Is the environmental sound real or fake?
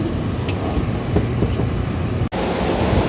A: real